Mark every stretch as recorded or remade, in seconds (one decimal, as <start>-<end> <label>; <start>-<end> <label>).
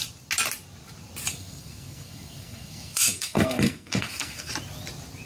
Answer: 0.0-1.3 recorded; 1.3-4.5 remade; 4.5-5.3 recorded